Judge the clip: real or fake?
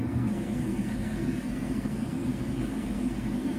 fake